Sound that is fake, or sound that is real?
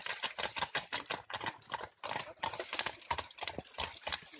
real